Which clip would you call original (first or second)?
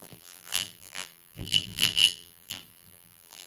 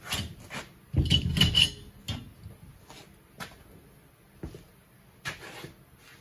second